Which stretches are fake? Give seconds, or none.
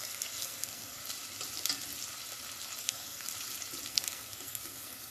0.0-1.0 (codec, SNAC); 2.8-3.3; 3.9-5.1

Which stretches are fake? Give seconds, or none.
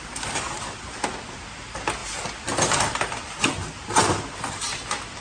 none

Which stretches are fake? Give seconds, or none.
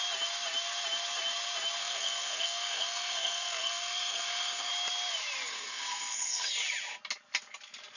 1.8-4.7 (codec, SNAC); 5.5-6.5